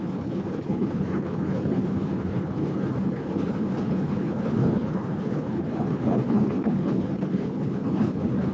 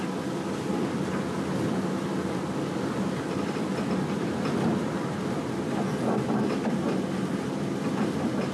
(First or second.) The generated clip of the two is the first